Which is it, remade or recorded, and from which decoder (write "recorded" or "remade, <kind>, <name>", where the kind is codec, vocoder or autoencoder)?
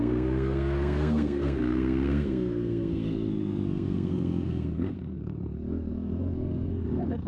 remade, codec, SNAC